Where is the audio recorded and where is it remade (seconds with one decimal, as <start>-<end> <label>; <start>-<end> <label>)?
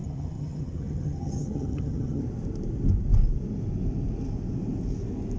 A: 0.0-2.2 remade; 2.2-5.4 recorded